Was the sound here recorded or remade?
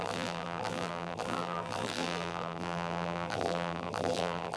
remade